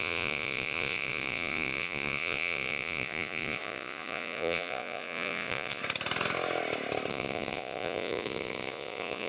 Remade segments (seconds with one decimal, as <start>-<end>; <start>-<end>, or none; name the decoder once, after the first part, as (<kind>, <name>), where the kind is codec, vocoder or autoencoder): 0.0-5.8 (vocoder, Vocos); 7.1-9.3